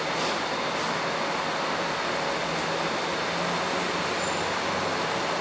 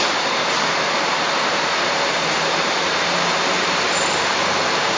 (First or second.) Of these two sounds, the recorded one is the first